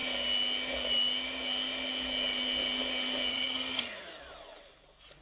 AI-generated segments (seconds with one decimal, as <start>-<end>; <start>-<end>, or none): 3.3-3.9